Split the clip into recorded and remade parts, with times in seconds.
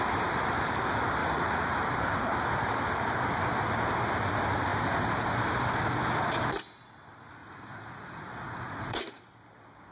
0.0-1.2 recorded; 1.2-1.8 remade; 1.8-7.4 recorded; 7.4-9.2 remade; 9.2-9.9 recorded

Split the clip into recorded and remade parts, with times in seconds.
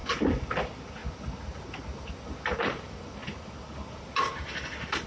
0.0-5.1 recorded